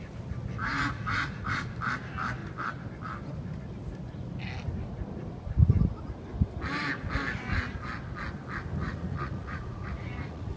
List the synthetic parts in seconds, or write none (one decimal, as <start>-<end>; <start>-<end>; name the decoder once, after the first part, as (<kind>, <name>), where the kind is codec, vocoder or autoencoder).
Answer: 0.6-1.7 (vocoder, Vocos); 8.8-10.6